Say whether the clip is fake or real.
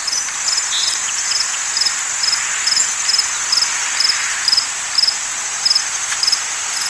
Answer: real